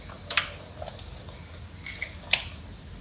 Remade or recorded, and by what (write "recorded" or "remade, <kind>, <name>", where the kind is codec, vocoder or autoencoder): recorded